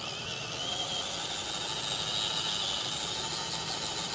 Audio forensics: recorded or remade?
recorded